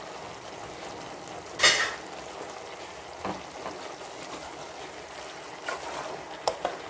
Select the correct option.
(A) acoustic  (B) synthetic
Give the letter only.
A